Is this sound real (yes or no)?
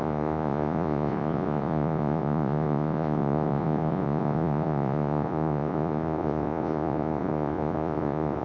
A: no